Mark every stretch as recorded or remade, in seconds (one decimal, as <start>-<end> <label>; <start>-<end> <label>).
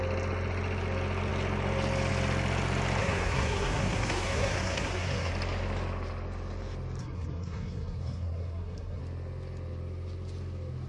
0.0-3.0 recorded; 3.0-5.3 remade; 5.3-7.0 recorded; 7.0-9.0 remade; 9.0-10.9 recorded